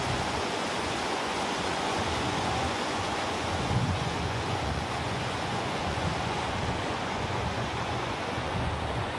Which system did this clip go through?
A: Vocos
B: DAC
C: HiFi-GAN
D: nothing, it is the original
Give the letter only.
A